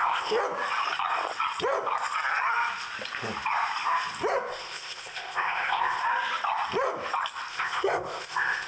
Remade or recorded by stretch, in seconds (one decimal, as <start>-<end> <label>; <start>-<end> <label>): 0.0-0.4 remade; 0.4-4.5 recorded; 4.5-6.0 remade; 6.0-7.5 recorded; 7.5-8.7 remade